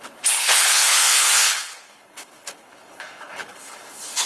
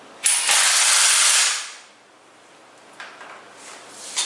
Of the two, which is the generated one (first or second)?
first